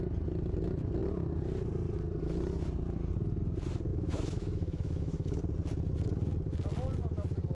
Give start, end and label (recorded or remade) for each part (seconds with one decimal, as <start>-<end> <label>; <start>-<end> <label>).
0.0-3.9 recorded; 3.9-5.4 remade; 5.4-7.5 recorded